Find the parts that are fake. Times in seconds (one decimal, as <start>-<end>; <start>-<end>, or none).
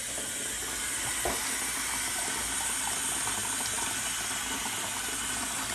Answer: none